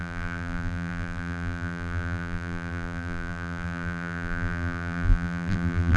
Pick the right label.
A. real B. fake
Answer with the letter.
B